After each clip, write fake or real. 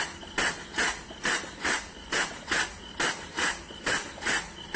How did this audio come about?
real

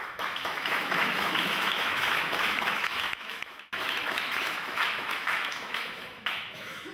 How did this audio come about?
fake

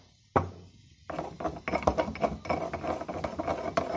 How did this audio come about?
real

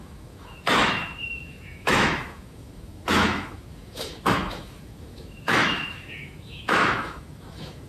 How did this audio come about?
fake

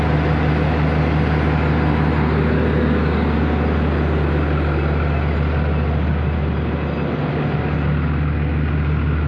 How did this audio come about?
real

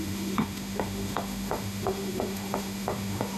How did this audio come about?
fake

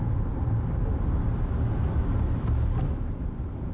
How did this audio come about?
real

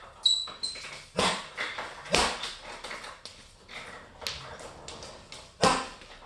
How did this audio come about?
real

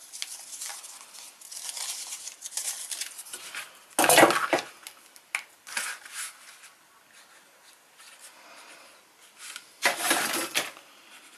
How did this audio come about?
real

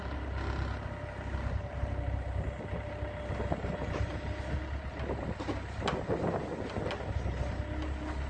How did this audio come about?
real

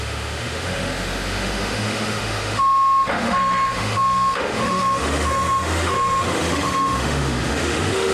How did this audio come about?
fake